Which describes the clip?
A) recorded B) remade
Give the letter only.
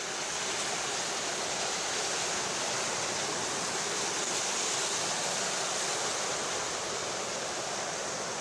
A